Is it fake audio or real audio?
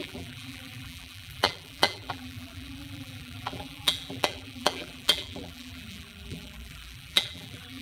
fake